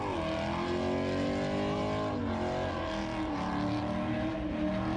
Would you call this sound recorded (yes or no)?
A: yes